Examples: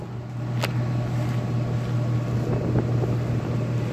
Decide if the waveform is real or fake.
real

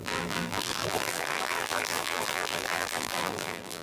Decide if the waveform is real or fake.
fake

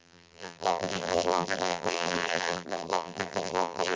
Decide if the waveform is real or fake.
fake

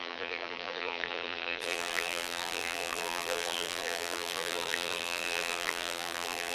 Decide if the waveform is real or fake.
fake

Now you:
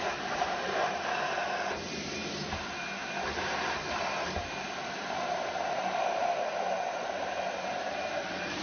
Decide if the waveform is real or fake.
fake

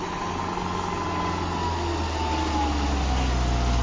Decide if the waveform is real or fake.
real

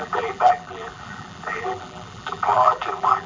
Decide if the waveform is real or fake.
fake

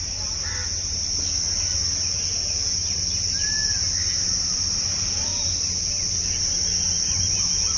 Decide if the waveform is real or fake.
real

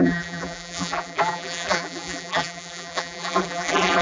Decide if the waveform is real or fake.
fake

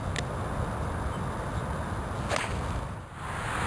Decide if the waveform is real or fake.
real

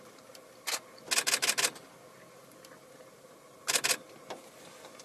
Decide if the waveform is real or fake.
real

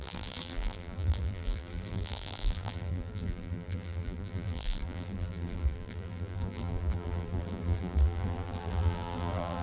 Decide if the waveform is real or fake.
fake